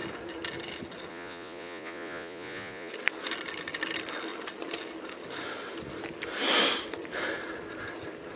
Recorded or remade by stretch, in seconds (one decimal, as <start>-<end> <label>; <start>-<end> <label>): 0.0-1.1 recorded; 1.1-2.9 remade; 2.9-8.4 recorded